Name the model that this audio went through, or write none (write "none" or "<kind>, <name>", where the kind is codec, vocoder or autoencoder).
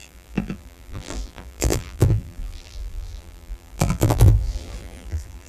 vocoder, BigVGAN v2